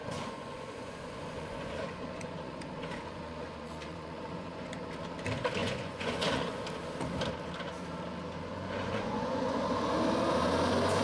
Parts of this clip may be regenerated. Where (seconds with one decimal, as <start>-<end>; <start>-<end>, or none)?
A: 0.0-4.9; 5.6-6.6; 8.5-9.6